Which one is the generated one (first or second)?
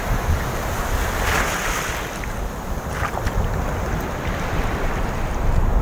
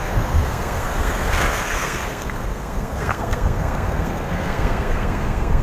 second